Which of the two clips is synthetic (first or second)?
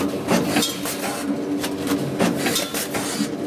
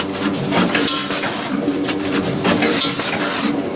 second